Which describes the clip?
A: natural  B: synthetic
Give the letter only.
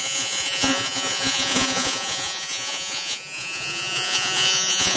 B